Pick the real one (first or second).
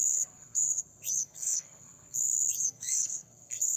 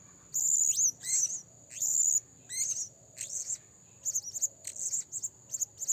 second